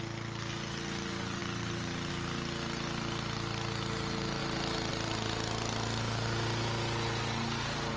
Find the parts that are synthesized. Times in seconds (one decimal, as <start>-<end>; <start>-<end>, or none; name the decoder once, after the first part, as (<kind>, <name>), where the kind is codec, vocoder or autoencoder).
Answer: none